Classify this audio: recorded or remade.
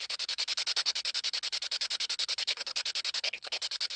remade